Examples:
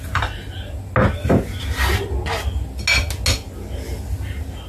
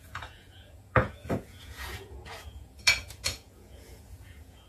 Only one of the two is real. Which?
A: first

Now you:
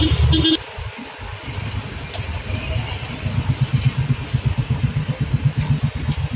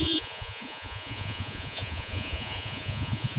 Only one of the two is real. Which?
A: first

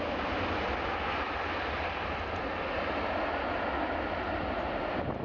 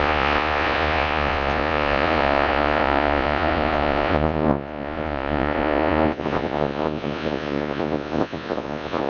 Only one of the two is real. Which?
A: first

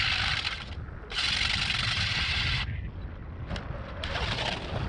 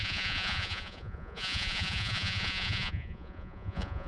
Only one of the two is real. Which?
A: first